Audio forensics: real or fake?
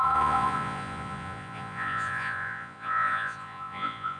fake